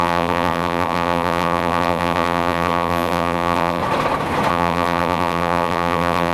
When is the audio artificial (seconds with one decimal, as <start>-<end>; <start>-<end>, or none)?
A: 0.0-3.8; 4.5-6.3